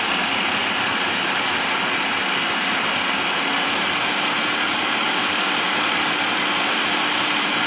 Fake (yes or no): no